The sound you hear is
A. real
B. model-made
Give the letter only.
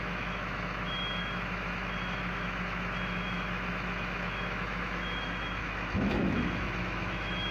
B